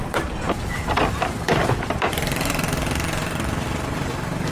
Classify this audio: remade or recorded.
remade